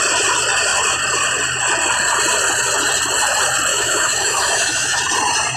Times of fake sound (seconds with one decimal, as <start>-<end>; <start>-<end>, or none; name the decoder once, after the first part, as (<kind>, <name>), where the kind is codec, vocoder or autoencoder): 3.7-5.0 (autoencoder, DAC-VAE)